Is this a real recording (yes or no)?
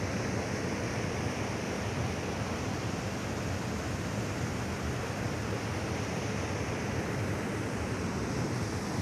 yes